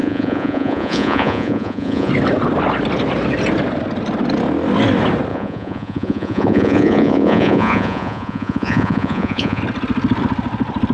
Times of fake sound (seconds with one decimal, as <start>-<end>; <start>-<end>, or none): 0.0-2.1; 5.3-9.6